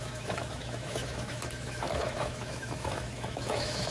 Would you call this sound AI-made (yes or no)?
yes